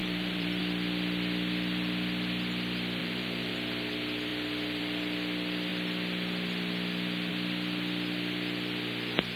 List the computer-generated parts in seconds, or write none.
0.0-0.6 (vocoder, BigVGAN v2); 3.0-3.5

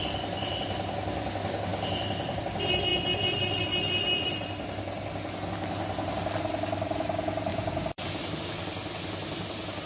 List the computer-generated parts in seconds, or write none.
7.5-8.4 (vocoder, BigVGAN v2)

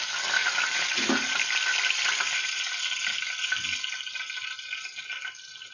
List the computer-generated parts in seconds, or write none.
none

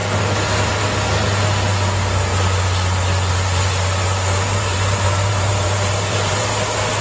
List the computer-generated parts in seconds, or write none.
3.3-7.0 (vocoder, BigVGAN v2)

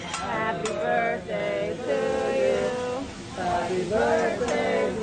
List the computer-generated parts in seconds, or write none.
none

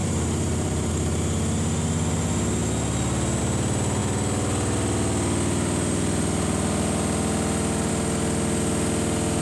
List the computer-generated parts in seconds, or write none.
0.0-0.9 (vocoder, BigVGAN v2)

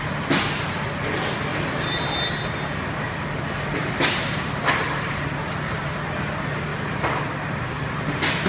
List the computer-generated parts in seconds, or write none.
1.5-2.0 (vocoder, BigVGAN v2); 3.8-5.4; 6.7-7.2